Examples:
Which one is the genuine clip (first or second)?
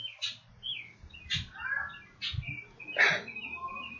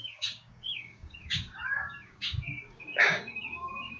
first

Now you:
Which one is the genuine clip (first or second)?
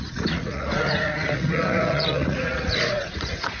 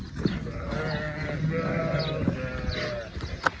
second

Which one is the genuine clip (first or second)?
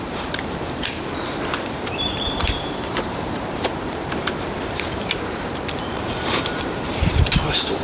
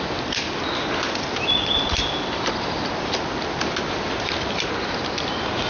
second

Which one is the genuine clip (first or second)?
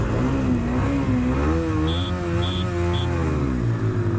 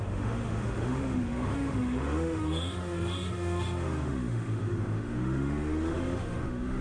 first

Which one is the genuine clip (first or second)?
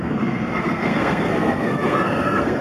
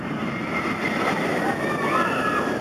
second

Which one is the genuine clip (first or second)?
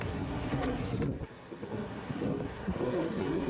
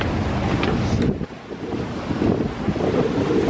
second